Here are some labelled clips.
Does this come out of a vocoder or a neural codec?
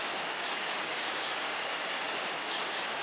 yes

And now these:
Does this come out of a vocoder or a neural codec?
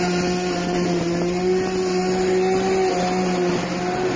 no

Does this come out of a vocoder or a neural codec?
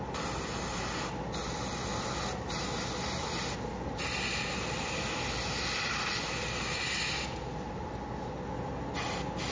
no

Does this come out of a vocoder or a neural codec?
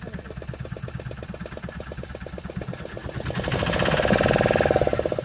no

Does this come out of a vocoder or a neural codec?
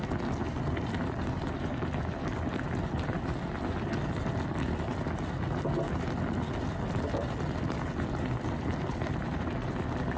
no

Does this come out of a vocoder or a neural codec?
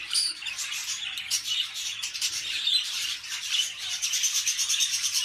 yes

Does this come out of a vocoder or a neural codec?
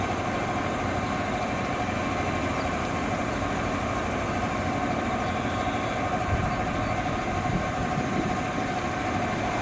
no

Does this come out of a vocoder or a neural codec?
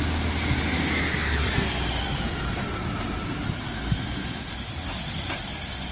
no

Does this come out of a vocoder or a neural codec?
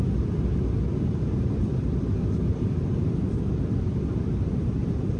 yes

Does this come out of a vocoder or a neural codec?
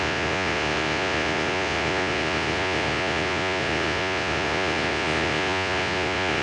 yes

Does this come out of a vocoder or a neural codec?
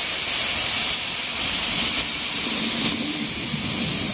no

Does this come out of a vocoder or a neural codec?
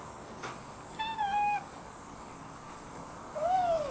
yes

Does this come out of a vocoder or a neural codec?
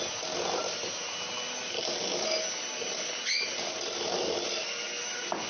no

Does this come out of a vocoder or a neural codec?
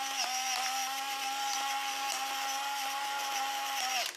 no